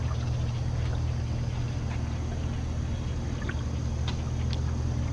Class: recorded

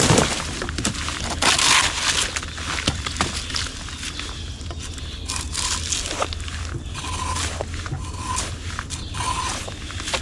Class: recorded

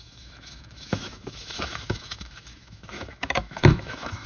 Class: remade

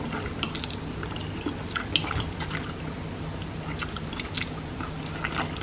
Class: recorded